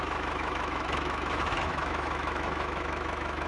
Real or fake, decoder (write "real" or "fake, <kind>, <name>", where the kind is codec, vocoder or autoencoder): fake, autoencoder, DAC-VAE